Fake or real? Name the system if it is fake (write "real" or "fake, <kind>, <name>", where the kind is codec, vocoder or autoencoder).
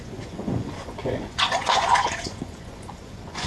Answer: fake, vocoder, Vocos